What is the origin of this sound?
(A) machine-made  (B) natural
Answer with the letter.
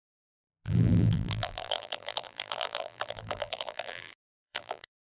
A